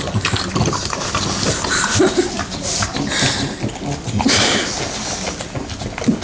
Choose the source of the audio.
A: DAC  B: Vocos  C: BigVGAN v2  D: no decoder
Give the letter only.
D